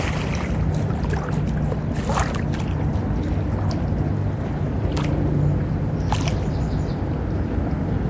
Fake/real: real